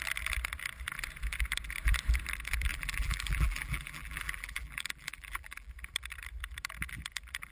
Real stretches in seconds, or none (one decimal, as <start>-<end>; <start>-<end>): 0.0-2.7; 5.7-7.5